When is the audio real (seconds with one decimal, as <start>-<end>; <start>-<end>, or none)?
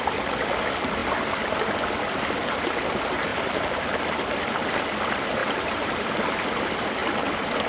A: 0.0-3.3; 4.0-5.4; 6.1-7.7